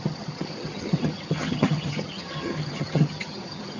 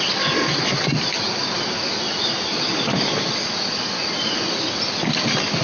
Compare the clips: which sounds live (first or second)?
second